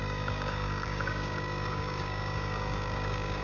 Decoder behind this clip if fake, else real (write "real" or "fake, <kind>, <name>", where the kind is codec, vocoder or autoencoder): fake, codec, DAC